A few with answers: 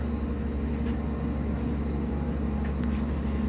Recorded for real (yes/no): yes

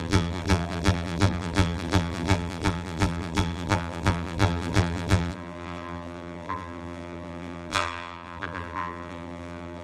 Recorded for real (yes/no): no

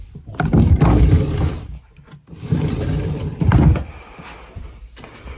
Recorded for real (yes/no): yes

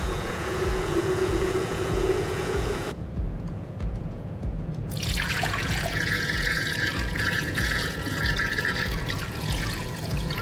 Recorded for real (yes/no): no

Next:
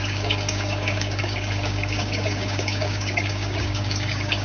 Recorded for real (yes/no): no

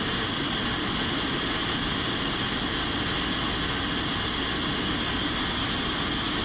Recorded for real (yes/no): yes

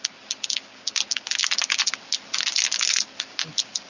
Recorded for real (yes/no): yes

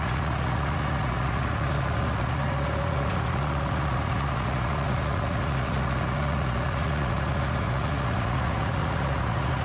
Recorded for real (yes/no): no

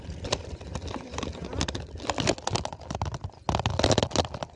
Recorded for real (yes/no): yes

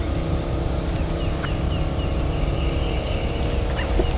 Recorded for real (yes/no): yes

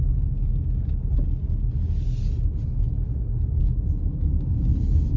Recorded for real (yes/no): yes